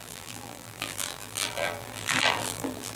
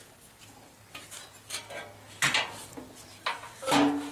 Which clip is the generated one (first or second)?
first